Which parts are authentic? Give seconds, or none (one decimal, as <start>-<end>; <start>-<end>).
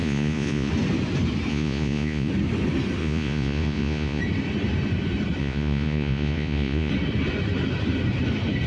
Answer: 0.7-1.5; 2.3-3.0; 4.2-5.4; 6.9-8.7